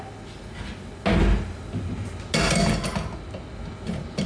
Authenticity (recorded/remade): recorded